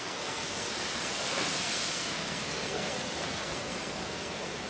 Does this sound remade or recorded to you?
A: remade